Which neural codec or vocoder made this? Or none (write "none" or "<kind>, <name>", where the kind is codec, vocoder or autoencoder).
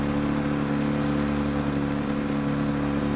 none